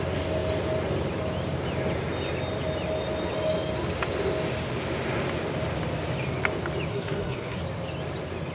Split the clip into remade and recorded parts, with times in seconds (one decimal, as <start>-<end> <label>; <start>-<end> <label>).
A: 0.0-6.9 recorded; 6.9-7.6 remade; 7.6-8.5 recorded